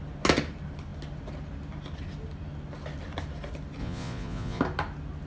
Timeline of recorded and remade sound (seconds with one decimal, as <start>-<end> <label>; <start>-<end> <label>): 0.0-3.8 recorded; 3.8-4.6 remade; 4.6-5.3 recorded